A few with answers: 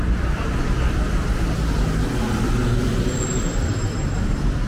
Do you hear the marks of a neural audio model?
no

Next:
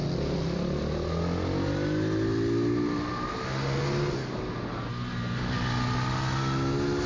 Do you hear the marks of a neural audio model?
no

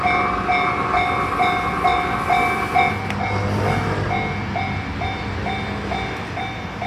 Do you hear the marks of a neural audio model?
no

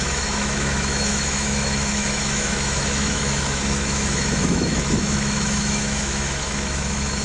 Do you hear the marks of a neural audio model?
yes